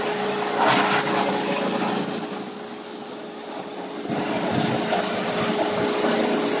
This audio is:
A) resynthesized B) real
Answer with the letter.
B